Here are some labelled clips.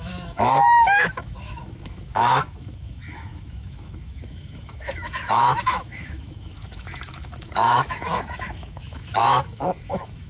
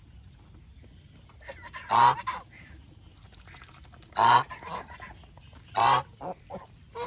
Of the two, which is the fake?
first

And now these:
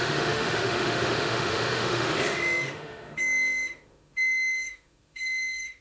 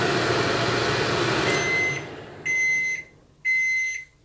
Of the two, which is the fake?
first